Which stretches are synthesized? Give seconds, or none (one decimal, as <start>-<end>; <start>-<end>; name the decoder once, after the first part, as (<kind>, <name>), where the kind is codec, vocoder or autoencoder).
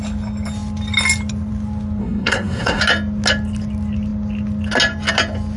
2.0-2.8 (codec, SNAC)